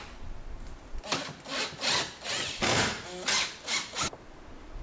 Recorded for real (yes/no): yes